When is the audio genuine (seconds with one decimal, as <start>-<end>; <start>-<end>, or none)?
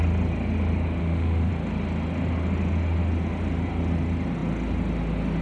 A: 0.0-1.0; 1.5-5.4